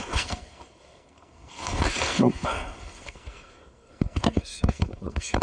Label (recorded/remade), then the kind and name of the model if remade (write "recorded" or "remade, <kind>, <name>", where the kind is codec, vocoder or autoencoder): remade, codec, SNAC